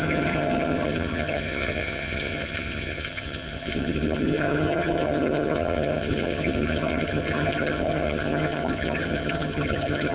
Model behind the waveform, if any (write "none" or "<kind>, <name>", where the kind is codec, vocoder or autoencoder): vocoder, HiFi-GAN